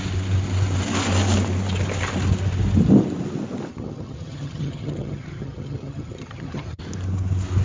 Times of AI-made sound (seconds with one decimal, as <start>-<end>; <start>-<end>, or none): 3.7-6.8